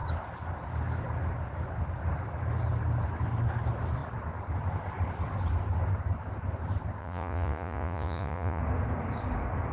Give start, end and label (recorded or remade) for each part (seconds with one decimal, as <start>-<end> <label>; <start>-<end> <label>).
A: 0.0-7.0 recorded; 7.0-8.6 remade; 8.6-9.7 recorded